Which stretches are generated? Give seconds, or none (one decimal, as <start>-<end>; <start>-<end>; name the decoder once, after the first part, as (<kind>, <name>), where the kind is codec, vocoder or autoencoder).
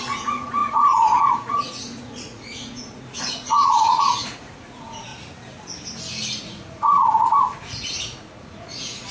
0.0-5.1 (vocoder, Vocos); 6.4-9.1